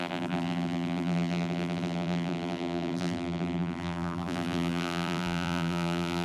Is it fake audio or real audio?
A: fake